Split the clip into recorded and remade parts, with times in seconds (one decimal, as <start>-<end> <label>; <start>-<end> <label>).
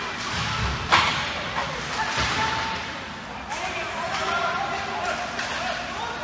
0.0-1.6 recorded; 1.6-4.6 remade; 4.6-6.2 recorded